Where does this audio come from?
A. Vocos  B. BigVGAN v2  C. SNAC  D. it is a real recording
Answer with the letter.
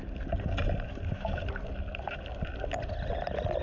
D